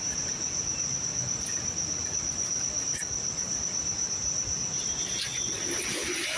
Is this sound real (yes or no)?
yes